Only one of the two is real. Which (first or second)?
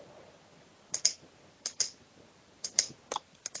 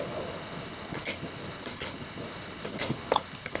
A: first